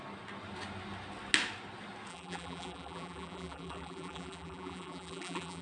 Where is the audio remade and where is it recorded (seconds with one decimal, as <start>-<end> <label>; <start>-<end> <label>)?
0.0-2.1 recorded; 2.1-5.6 remade